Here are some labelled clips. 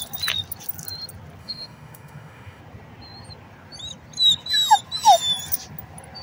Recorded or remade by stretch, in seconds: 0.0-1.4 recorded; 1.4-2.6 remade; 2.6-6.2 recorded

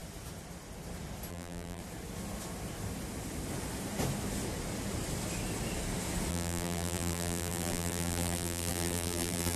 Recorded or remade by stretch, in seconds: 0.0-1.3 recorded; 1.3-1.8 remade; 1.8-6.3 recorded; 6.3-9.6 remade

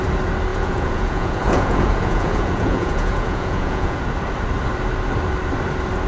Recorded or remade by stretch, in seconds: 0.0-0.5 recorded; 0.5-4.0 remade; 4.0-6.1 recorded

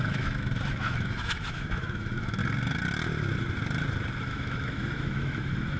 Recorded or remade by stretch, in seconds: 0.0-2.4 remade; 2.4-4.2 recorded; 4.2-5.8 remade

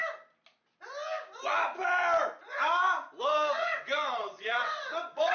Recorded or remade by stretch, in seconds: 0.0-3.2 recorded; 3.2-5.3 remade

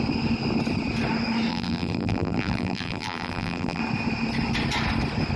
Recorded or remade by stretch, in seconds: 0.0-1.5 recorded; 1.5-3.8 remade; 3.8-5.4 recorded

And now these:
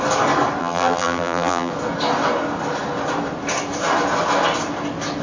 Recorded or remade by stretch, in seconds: 0.0-0.6 recorded; 0.6-1.7 remade; 1.7-5.2 recorded